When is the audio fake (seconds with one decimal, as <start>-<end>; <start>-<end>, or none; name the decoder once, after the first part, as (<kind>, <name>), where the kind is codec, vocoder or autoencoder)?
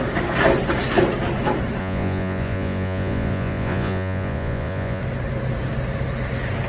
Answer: 1.8-5.0 (vocoder, Vocos)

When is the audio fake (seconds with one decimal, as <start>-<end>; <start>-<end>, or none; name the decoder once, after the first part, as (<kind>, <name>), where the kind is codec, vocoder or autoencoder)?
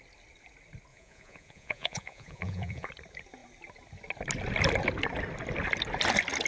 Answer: 0.9-2.9 (vocoder, Vocos)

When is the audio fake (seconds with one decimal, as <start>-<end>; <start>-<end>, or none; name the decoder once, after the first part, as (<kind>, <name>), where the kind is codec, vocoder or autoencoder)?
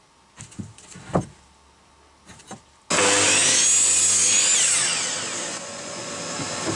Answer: 5.5-6.1 (vocoder, Vocos)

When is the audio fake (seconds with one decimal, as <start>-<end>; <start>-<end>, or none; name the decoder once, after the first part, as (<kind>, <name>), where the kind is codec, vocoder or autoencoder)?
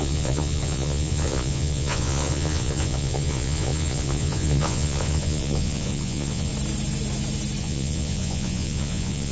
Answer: 0.0-6.5 (vocoder, Vocos); 7.6-9.3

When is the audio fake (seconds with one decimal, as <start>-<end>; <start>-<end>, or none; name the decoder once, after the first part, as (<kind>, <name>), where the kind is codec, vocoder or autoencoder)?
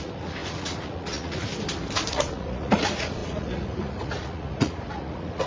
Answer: 0.0-1.5 (vocoder, Vocos); 2.1-5.5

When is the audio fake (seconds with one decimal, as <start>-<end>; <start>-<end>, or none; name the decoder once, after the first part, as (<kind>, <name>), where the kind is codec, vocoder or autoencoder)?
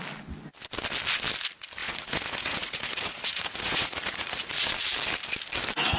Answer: 1.8-4.7 (vocoder, Vocos)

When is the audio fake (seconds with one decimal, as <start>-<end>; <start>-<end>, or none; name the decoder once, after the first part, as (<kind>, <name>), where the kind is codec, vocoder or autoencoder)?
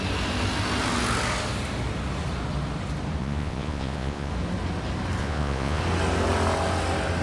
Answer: 3.2-4.3 (vocoder, Vocos); 5.2-5.8